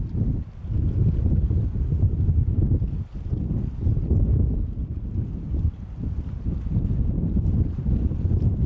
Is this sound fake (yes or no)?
no